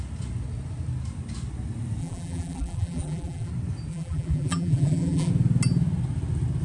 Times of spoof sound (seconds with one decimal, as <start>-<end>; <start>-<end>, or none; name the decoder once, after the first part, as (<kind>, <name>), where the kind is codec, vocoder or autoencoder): 2.0-3.5 (vocoder, BigVGAN v2); 3.9-5.3